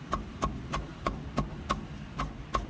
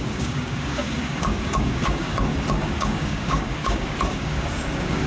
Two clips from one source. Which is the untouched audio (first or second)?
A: first